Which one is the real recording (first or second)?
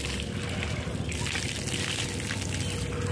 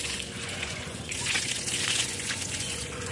first